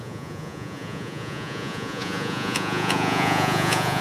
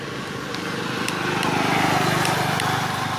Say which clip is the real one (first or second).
second